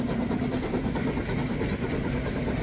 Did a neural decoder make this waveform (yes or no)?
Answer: no